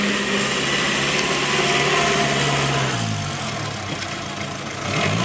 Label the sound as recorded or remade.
recorded